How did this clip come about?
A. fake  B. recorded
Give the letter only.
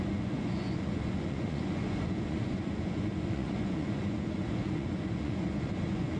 A